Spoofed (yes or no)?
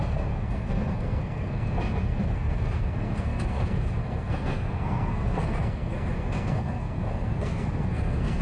yes